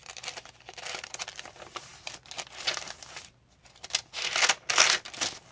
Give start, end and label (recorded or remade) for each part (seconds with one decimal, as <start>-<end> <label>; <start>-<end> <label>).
0.0-1.5 remade; 1.5-5.5 recorded

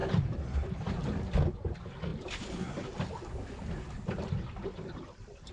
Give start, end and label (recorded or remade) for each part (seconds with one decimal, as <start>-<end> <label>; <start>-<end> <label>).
0.0-1.3 remade; 1.3-2.1 recorded; 2.1-5.5 remade

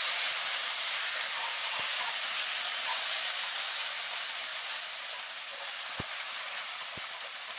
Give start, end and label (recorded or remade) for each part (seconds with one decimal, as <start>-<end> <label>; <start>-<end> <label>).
0.0-4.5 remade; 4.5-6.4 recorded; 6.4-7.6 remade

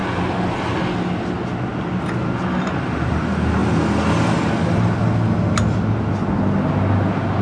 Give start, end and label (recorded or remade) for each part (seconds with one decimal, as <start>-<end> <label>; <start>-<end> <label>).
0.0-7.4 recorded

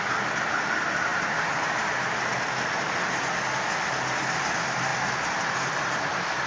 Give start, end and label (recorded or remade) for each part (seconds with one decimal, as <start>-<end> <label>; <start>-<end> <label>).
0.0-4.9 recorded; 4.9-5.4 remade; 5.4-6.5 recorded

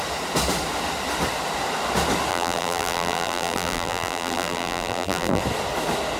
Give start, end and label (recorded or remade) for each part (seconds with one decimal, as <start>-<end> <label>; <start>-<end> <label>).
0.0-2.3 recorded; 2.3-5.4 remade; 5.4-6.2 recorded

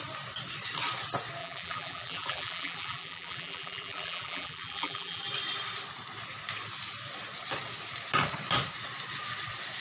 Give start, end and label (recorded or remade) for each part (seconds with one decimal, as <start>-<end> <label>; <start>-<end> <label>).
0.0-1.4 recorded; 1.4-5.2 remade; 5.2-9.8 recorded